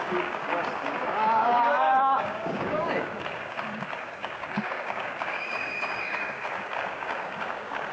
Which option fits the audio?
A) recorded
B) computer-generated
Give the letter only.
B